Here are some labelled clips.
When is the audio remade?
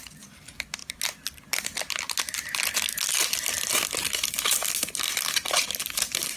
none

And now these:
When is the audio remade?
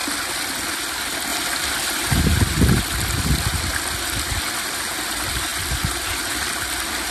1.3-2.2 (vocoder, BigVGAN v2)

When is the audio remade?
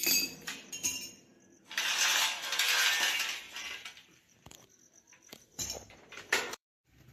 0.0-1.3 (vocoder, BigVGAN v2); 1.8-7.1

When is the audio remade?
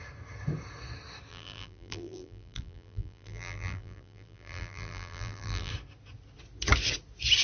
1.3-5.7 (vocoder, BigVGAN v2)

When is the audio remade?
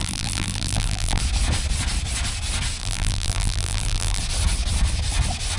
0.0-1.2 (vocoder, BigVGAN v2); 2.8-4.2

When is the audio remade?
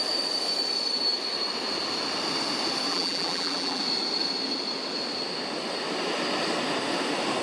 2.9-3.8 (vocoder, BigVGAN v2)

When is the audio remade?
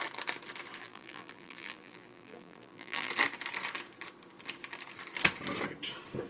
0.8-3.1 (vocoder, BigVGAN v2)